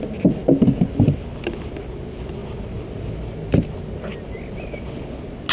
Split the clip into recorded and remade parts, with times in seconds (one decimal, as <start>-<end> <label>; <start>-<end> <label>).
0.0-5.5 recorded